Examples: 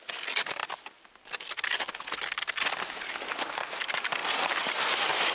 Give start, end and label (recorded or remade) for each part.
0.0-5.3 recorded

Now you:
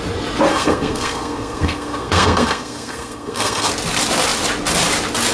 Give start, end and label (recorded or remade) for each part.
0.0-0.5 recorded; 0.5-3.7 remade; 3.7-5.3 recorded

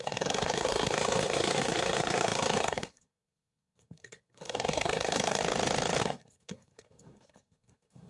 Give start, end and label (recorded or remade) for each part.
0.0-5.4 remade; 5.4-6.0 recorded; 6.0-8.1 remade